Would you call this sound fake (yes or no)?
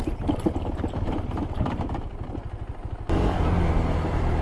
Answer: yes